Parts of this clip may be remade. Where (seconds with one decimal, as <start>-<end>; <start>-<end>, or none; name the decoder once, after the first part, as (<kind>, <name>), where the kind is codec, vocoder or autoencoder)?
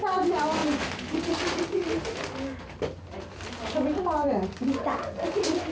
none